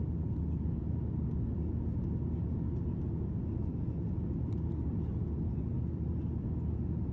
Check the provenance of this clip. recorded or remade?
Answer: recorded